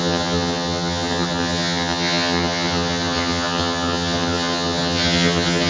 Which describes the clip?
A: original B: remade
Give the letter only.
B